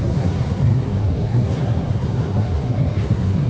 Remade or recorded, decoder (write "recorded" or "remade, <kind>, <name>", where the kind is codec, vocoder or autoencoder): remade, codec, SNAC